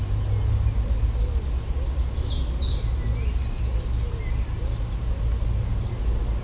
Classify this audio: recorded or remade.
recorded